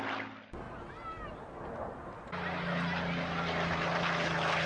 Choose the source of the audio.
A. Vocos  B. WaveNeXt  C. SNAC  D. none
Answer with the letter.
D